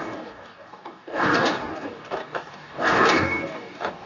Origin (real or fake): fake